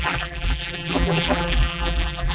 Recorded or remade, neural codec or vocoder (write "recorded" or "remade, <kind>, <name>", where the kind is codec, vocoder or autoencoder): remade, vocoder, BigVGAN v2